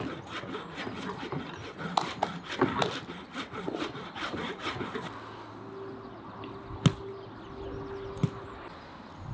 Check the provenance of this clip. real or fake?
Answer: real